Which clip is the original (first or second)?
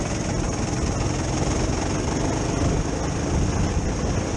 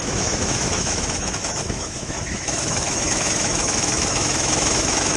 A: first